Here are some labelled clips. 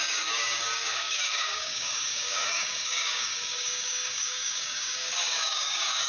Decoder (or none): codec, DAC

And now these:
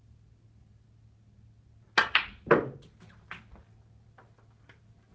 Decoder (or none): none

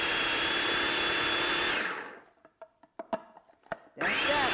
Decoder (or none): none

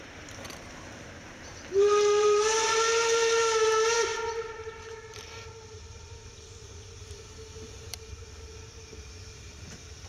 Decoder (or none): vocoder, BigVGAN v2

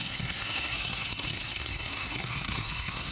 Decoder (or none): codec, SNAC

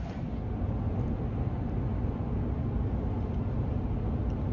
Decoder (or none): none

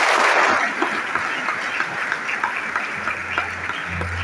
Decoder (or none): none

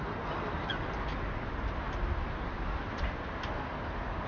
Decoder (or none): none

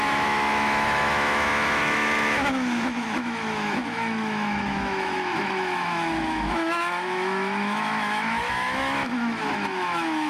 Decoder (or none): autoencoder, DAC-VAE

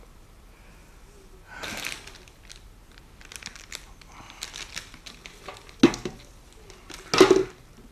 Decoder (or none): none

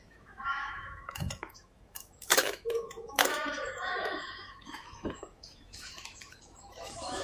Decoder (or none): autoencoder, DAC-VAE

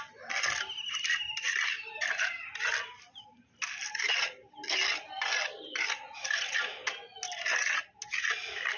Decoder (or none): none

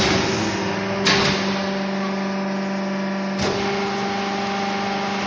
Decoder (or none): none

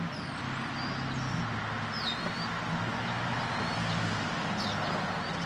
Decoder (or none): none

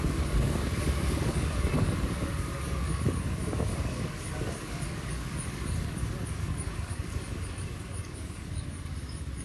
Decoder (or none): codec, DAC